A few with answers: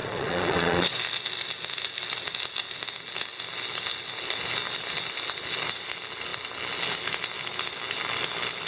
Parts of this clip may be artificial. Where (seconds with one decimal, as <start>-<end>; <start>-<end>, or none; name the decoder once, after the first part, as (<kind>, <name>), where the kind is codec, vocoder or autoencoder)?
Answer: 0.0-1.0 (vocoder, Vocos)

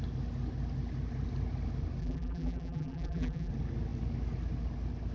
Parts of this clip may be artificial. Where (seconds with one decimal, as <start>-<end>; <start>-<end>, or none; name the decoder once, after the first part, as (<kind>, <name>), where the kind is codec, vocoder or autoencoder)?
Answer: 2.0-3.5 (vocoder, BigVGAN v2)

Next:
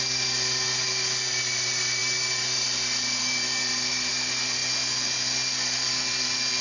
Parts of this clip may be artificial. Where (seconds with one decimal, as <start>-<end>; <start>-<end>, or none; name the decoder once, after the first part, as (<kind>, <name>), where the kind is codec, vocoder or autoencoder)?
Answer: none

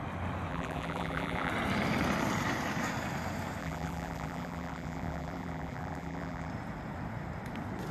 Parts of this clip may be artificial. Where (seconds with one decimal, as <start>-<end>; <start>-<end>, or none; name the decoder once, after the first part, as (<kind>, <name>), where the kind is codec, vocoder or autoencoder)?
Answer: 0.5-1.5 (vocoder, BigVGAN v2); 3.6-6.5